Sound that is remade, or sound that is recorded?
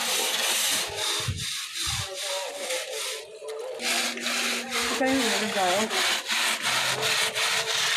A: recorded